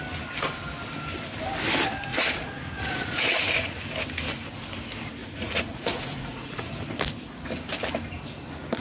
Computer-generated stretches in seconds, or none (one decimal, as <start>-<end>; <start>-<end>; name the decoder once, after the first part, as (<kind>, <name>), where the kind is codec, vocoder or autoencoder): 2.1-3.8 (vocoder, Vocos); 5.2-6.7